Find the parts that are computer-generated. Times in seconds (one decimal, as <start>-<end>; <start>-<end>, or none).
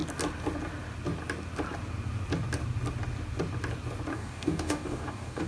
4.1-5.5